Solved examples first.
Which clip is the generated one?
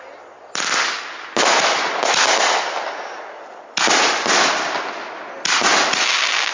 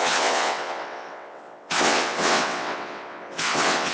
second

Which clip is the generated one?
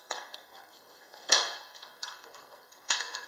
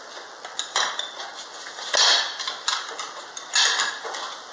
first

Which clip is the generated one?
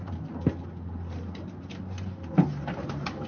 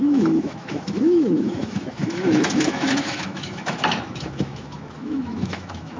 second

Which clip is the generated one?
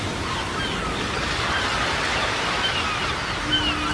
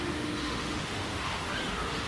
second